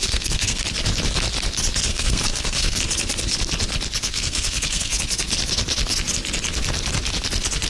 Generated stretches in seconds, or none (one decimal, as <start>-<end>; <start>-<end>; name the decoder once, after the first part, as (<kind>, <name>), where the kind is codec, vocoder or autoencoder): 0.0-0.6 (codec, SNAC); 1.9-2.8; 4.0-5.0